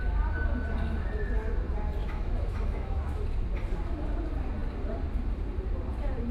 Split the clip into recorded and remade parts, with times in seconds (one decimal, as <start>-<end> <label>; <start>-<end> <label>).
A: 0.0-2.0 recorded; 2.0-3.2 remade; 3.2-6.3 recorded